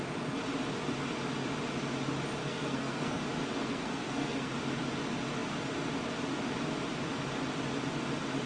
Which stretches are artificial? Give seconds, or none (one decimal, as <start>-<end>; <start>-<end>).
2.4-3.2; 3.6-4.5